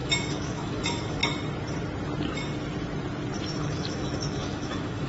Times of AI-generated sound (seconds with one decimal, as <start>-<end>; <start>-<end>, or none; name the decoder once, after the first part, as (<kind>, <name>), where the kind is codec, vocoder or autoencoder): 0.0-1.2 (autoencoder, DAC-VAE); 3.6-5.1